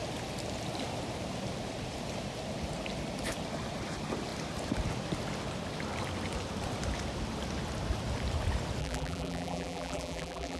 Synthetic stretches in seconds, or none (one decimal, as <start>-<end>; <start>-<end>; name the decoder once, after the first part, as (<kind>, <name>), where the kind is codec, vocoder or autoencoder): 8.8-10.6 (vocoder, BigVGAN v2)